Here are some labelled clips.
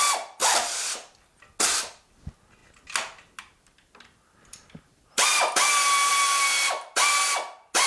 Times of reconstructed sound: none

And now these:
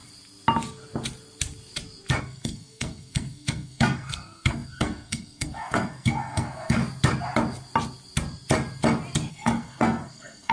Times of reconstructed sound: 2.2-6.8 (codec, SNAC); 9.3-10.5

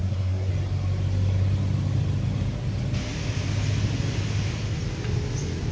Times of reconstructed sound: 0.0-0.5 (codec, SNAC)

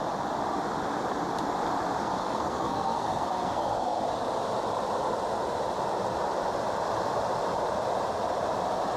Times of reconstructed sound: 2.0-4.0 (codec, SNAC)

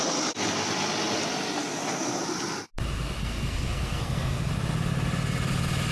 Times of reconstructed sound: 3.2-4.5 (codec, SNAC)